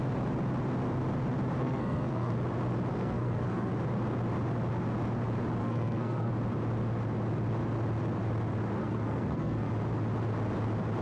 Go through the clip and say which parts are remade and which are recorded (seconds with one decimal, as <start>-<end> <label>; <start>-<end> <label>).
0.0-1.6 recorded; 1.6-2.3 remade; 2.3-2.9 recorded; 2.9-3.7 remade; 3.7-5.6 recorded; 5.6-6.3 remade; 6.3-8.8 recorded; 8.8-9.7 remade; 9.7-11.0 recorded